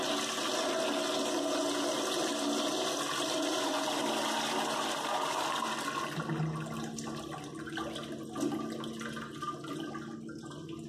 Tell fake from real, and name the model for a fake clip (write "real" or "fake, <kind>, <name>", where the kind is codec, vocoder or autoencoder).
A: real